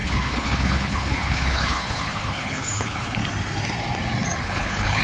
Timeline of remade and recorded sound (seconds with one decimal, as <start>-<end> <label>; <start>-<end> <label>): 0.0-3.2 remade; 3.2-4.4 recorded; 4.4-5.0 remade